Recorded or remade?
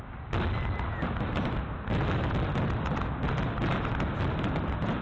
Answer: recorded